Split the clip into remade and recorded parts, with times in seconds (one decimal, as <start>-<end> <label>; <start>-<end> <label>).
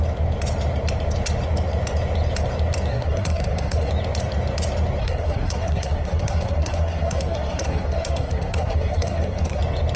0.0-2.9 recorded; 2.9-3.9 remade; 3.9-5.0 recorded; 5.0-9.6 remade; 9.6-10.0 recorded